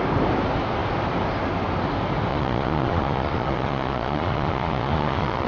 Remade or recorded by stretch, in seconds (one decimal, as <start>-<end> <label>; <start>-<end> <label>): 0.0-2.3 recorded; 2.3-5.5 remade